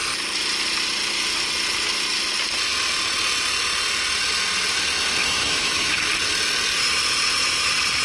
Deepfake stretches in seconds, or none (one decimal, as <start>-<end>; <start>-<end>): 5.2-6.1